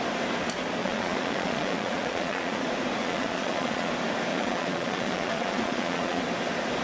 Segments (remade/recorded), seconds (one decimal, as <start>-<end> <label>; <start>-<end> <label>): 0.0-0.8 recorded; 0.8-2.6 remade; 2.6-3.0 recorded; 3.0-3.9 remade; 3.9-4.3 recorded; 4.3-6.2 remade; 6.2-6.8 recorded